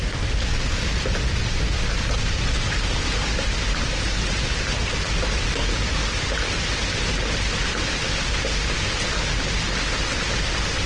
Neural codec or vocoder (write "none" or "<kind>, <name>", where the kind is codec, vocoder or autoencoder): none